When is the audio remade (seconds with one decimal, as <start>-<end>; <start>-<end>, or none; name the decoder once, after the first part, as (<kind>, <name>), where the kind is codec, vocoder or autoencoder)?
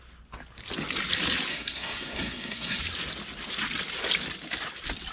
1.5-2.8 (codec, SNAC)